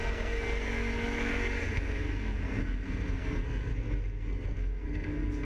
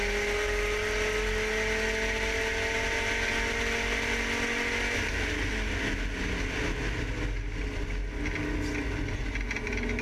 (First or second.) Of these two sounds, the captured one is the second